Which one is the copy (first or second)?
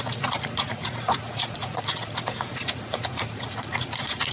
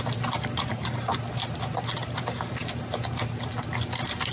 first